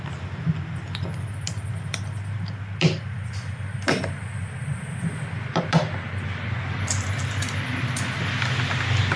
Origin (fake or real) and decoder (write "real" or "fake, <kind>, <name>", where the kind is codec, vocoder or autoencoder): real